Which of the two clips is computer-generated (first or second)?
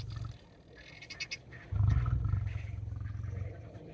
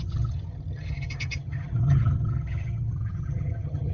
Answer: second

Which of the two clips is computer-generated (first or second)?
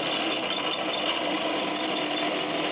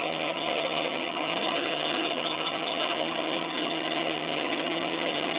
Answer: second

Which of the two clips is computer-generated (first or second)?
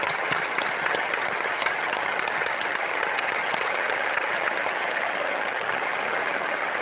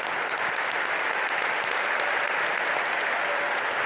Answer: first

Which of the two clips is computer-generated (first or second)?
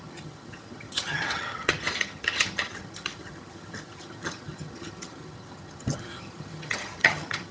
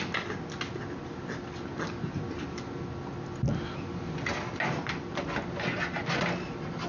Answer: first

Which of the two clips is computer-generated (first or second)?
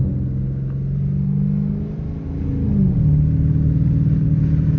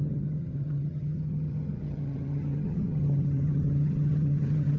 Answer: second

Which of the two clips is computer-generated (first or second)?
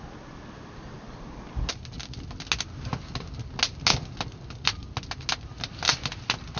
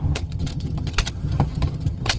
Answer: second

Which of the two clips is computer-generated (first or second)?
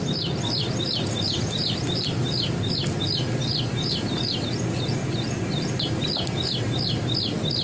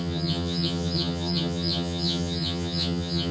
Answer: second